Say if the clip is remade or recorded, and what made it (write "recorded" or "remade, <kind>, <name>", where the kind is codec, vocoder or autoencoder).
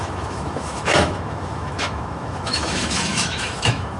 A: remade, autoencoder, DAC-VAE